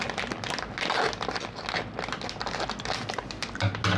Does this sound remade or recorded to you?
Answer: recorded